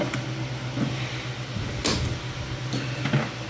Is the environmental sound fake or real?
real